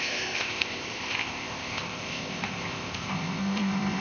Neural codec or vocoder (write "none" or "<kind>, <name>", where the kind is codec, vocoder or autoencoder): codec, ZipCodec